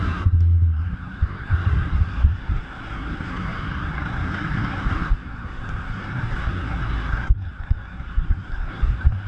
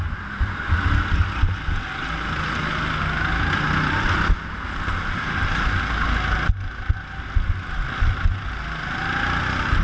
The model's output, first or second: first